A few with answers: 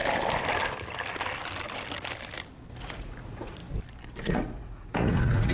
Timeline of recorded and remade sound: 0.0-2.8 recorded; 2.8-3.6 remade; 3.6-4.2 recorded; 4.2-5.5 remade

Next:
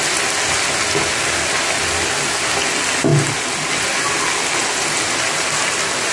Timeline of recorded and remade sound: 0.0-6.1 recorded

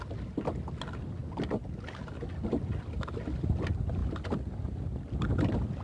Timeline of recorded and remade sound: 0.0-5.8 recorded

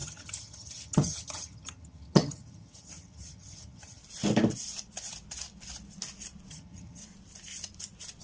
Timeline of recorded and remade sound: 0.0-4.0 remade; 4.0-6.5 recorded; 6.5-7.0 remade; 7.0-8.2 recorded

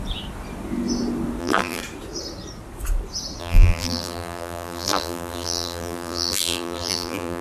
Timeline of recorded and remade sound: 0.0-1.4 recorded; 1.4-1.8 remade; 1.8-3.4 recorded; 3.4-7.4 remade

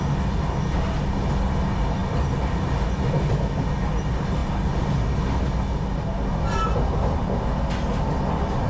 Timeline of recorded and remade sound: 0.0-8.7 recorded